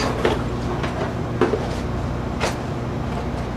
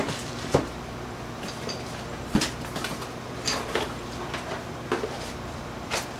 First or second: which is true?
first